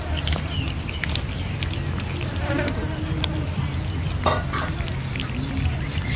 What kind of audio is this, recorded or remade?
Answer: recorded